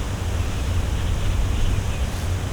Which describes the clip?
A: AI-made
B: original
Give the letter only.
B